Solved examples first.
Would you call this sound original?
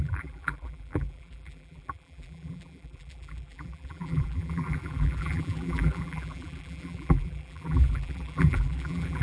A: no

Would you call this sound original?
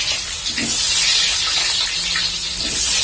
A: yes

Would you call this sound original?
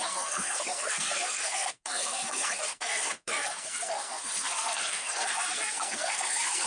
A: no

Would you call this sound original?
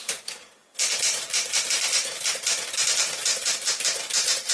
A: no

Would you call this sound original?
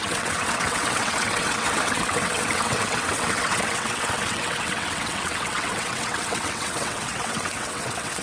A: no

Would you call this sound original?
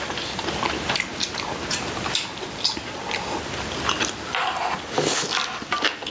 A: yes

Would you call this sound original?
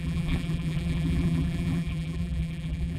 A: no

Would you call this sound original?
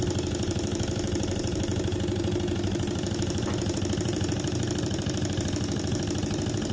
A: no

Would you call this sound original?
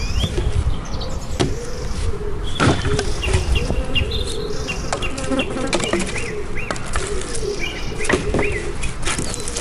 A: yes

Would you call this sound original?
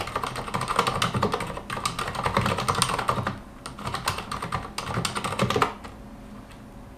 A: yes